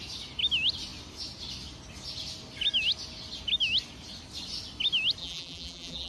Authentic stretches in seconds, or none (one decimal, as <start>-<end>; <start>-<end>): 0.0-5.2

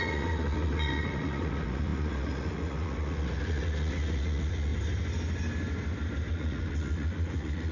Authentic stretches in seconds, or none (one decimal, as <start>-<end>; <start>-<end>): 4.7-6.3

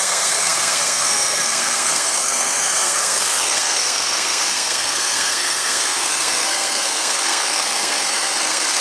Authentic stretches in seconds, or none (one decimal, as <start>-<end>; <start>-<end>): none

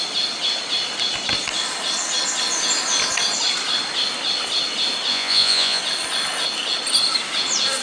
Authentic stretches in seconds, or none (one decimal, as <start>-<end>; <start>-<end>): 0.0-5.1; 5.8-7.8

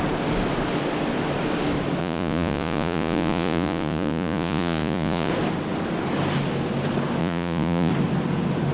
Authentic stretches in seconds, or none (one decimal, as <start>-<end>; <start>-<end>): 0.0-2.0; 5.3-7.2; 7.9-8.7

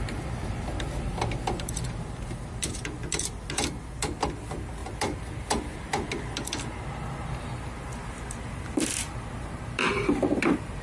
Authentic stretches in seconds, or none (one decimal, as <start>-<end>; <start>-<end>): 0.0-10.8

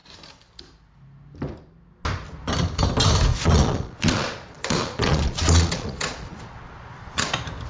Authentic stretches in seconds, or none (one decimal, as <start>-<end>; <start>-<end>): 0.0-3.3; 7.3-7.7